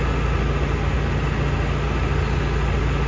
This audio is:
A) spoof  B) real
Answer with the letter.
B